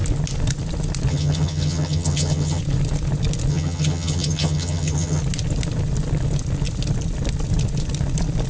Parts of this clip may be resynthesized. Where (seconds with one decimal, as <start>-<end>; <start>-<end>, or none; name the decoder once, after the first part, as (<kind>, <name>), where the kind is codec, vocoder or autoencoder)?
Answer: 1.1-2.6 (vocoder, HiFi-GAN); 3.5-5.2